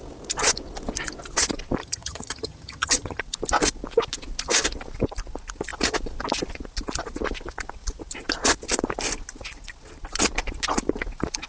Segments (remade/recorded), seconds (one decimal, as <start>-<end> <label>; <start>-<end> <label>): 0.0-1.8 recorded; 1.8-3.2 remade; 3.2-11.5 recorded